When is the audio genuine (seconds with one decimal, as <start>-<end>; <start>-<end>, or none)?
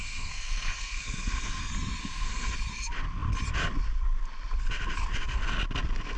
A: 1.6-2.0; 2.5-6.2